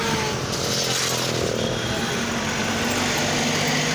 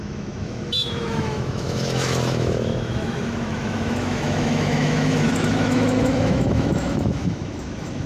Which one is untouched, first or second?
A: first